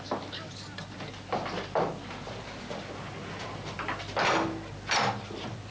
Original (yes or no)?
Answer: yes